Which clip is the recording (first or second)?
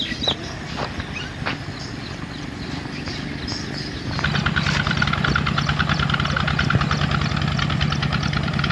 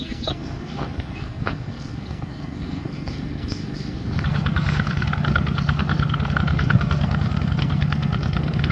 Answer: first